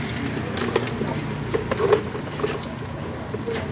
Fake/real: real